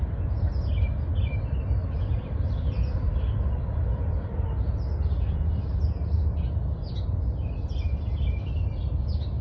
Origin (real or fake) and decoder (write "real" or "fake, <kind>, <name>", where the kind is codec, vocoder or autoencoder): real